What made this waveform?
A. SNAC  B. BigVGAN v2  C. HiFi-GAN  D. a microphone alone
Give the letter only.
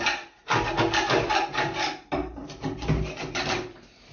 D